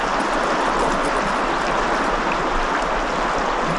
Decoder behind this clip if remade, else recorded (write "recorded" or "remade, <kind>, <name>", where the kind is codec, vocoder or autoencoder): recorded